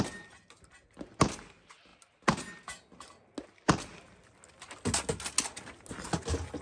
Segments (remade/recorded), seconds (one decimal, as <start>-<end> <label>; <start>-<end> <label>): 0.0-6.6 recorded